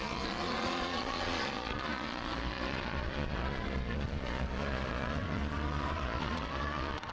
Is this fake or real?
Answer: fake